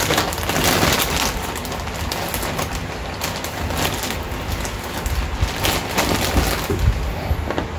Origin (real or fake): real